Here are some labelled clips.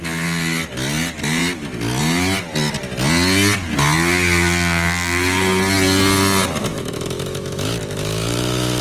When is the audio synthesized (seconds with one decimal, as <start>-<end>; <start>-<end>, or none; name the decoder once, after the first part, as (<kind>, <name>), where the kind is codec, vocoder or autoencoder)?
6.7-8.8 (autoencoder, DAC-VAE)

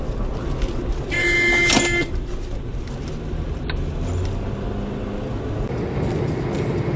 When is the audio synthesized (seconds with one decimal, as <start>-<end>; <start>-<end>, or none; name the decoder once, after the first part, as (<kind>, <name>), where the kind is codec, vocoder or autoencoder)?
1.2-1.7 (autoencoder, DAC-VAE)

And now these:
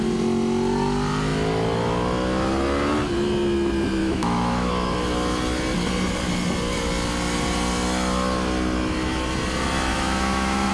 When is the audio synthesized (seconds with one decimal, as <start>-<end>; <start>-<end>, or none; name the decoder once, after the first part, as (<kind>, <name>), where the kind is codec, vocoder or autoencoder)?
4.0-4.7 (autoencoder, DAC-VAE); 9.9-10.7

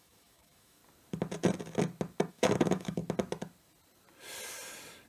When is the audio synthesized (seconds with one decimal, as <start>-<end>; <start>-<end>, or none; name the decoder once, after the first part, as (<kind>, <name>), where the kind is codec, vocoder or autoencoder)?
0.0-0.8 (autoencoder, DAC-VAE); 2.3-3.0

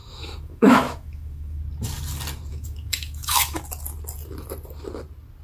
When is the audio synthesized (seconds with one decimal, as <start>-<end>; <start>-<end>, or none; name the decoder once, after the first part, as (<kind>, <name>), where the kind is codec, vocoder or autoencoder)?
0.0-1.6 (autoencoder, DAC-VAE); 2.5-3.6

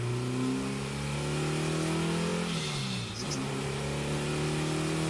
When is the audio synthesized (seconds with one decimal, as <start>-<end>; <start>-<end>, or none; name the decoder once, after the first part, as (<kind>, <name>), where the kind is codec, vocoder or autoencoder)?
none